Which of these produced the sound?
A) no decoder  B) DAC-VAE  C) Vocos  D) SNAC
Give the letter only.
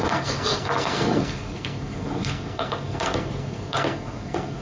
D